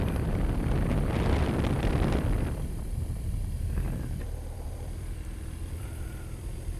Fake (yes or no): yes